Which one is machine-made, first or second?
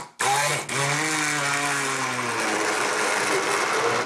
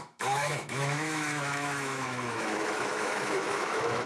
second